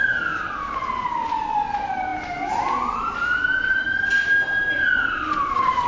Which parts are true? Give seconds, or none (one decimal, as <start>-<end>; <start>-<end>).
0.0-5.9